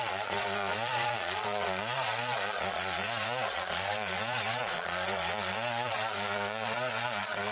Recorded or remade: remade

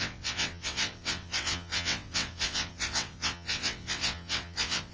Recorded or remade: remade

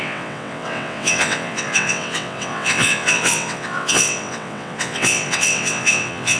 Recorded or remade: remade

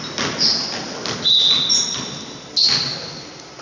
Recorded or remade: recorded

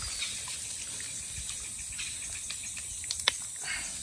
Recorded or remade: recorded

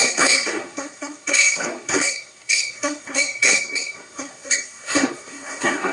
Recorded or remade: remade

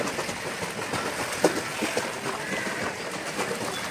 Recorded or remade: recorded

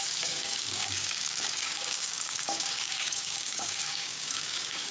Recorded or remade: remade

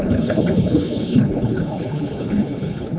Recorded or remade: remade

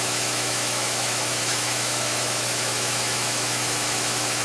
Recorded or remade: remade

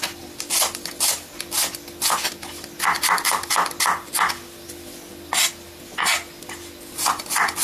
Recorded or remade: recorded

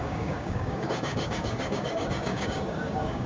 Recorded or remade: remade